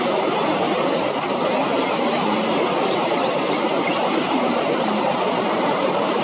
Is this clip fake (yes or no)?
yes